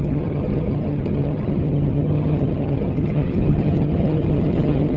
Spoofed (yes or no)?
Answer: yes